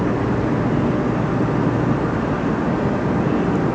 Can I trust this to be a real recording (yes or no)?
yes